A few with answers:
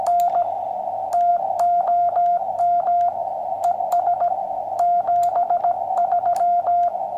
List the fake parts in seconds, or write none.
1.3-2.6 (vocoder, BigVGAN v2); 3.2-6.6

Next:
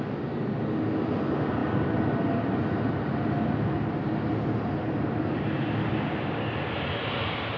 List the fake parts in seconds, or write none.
none

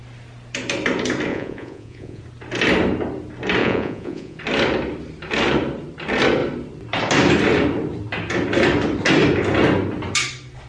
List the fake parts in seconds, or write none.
1.3-2.2 (vocoder, Vocos); 3.6-4.4

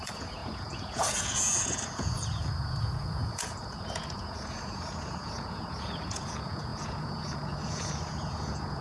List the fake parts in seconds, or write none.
0.0-8.8 (vocoder, Vocos)